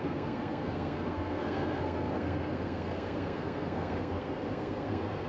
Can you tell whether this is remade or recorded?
remade